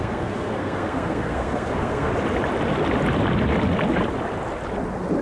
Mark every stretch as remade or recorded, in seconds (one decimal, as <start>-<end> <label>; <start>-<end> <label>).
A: 0.0-2.1 remade; 2.1-5.2 recorded